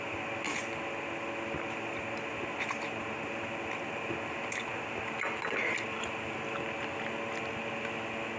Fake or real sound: real